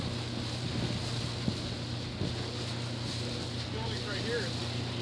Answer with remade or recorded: recorded